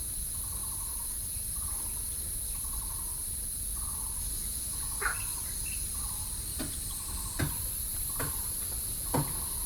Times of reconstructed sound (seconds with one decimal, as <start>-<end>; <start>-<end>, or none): 0.0-0.6; 1.3-3.7; 6.0-6.5; 7.5-9.7